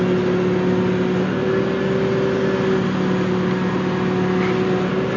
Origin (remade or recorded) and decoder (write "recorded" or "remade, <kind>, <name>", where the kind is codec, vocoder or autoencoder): recorded